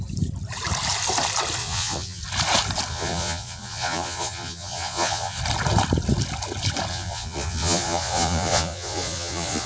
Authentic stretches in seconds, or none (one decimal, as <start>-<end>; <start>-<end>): 0.0-1.6; 2.2-2.9; 5.4-6.9